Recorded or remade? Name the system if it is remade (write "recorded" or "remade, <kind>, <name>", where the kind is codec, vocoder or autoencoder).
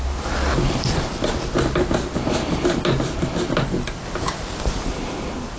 recorded